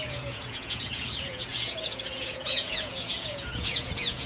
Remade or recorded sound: remade